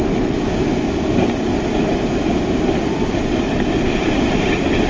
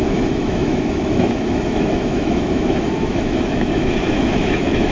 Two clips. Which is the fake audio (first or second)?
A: second